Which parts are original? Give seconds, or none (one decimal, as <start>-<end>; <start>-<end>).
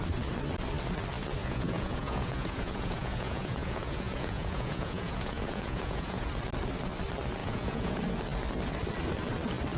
0.0-1.4; 6.3-7.4; 8.0-9.8